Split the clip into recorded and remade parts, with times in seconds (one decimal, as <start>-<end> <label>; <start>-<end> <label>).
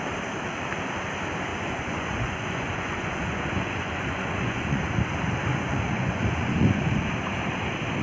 0.0-1.5 recorded; 1.5-4.8 remade; 4.8-5.5 recorded; 5.5-6.9 remade; 6.9-8.0 recorded